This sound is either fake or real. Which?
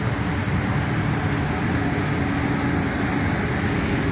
real